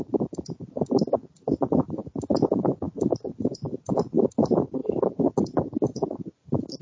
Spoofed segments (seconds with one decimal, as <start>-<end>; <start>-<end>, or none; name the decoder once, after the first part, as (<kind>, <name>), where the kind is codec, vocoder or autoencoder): none